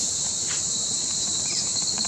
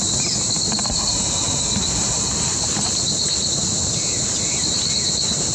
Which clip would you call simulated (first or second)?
first